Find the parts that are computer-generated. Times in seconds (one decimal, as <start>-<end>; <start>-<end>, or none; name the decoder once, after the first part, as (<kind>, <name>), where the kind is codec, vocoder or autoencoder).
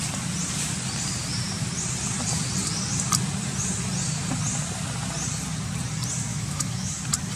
6.3-7.0 (autoencoder, DAC-VAE)